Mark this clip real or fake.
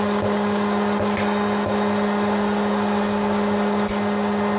real